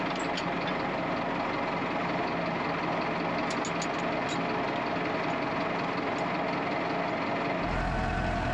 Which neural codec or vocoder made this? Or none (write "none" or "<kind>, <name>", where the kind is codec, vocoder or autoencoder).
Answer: none